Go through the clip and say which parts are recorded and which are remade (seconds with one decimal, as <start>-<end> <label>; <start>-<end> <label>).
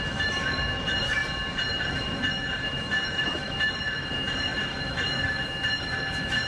0.0-1.2 remade; 1.2-1.7 recorded; 1.7-6.5 remade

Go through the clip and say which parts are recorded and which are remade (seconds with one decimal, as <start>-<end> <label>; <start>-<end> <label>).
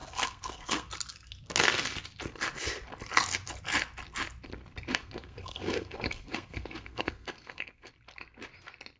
0.0-0.9 remade; 0.9-4.9 recorded; 4.9-7.9 remade; 7.9-9.0 recorded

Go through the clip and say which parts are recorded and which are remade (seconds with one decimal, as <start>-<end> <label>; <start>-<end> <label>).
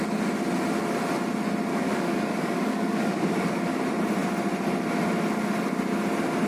0.0-1.7 recorded; 1.7-3.8 remade; 3.8-6.5 recorded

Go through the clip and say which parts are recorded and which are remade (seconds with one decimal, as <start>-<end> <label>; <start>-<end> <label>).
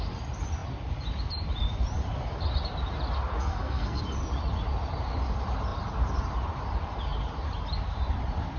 0.0-3.4 recorded; 3.4-4.0 remade; 4.0-8.6 recorded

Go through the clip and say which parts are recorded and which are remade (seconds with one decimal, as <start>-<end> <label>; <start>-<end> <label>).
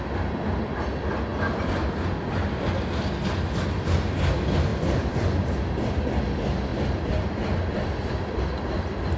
0.0-1.3 recorded; 1.3-1.8 remade; 1.8-6.7 recorded; 6.7-8.4 remade; 8.4-9.2 recorded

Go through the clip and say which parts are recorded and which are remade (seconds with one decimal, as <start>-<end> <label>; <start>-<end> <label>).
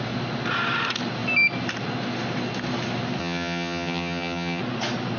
0.0-3.2 recorded; 3.2-4.6 remade; 4.6-5.2 recorded